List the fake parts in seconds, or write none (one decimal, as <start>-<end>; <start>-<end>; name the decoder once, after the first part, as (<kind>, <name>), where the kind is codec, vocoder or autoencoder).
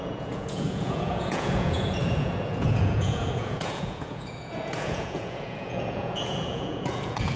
0.0-7.4 (vocoder, Vocos)